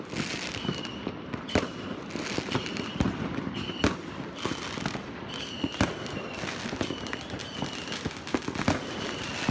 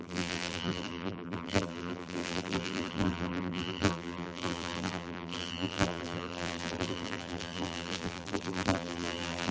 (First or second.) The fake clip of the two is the second